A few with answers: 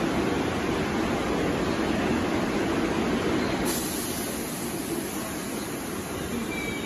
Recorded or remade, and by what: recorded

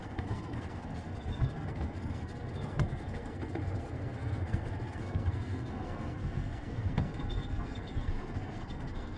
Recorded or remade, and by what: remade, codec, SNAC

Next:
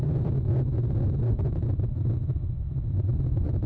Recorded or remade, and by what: remade, vocoder, Vocos